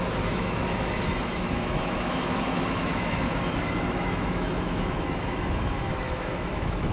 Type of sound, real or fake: fake